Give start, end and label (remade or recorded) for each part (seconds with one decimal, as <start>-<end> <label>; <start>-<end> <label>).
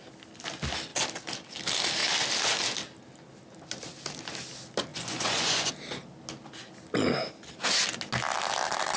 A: 0.0-4.9 recorded; 4.9-5.7 remade; 5.7-9.0 recorded